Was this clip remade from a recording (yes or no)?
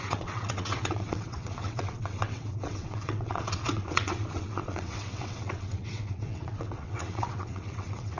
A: yes